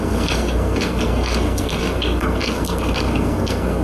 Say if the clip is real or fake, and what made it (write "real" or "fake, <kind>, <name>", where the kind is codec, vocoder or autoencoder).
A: fake, codec, SNAC